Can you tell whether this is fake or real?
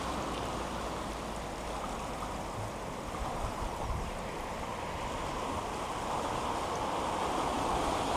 real